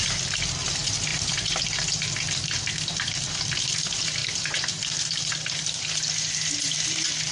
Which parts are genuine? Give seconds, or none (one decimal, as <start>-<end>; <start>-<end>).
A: 0.0-4.2; 5.9-7.3

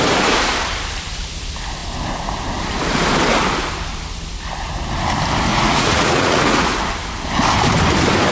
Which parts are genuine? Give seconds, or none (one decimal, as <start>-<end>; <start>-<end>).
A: 0.0-5.5; 6.8-8.3

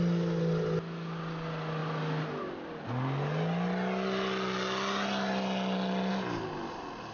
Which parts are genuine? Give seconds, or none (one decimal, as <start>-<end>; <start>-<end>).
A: 0.0-7.1